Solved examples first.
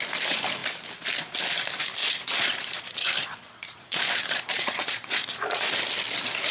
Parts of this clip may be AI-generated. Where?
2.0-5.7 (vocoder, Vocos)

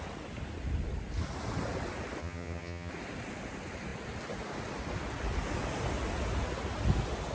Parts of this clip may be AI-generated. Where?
2.2-2.9 (vocoder, HiFi-GAN)

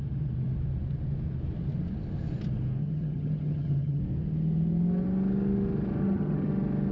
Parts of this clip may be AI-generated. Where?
2.8-4.0 (vocoder, HiFi-GAN); 6.0-6.5

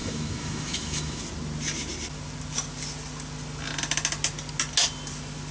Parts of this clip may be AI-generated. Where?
0.0-1.2 (autoencoder, DAC-VAE)